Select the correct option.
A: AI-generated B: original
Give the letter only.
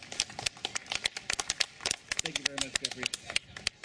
B